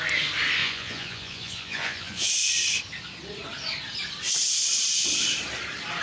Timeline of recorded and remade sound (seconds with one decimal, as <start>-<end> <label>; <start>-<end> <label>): 0.0-0.6 recorded; 0.6-2.3 remade; 2.3-6.0 recorded